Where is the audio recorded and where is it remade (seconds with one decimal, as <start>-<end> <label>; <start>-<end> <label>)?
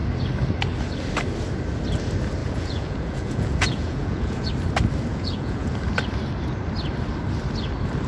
0.0-2.4 recorded; 2.4-4.5 remade; 4.5-5.1 recorded; 5.1-5.7 remade; 5.7-8.1 recorded